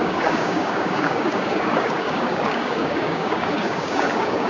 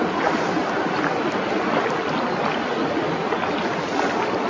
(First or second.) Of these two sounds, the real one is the second